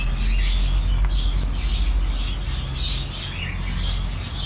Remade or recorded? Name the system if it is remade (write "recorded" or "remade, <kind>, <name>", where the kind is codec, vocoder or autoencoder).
recorded